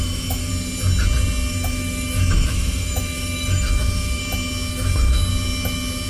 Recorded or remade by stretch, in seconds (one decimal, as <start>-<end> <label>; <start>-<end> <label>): 0.0-0.5 remade; 0.5-1.5 recorded; 1.5-4.2 remade; 4.2-4.7 recorded; 4.7-5.3 remade; 5.3-6.1 recorded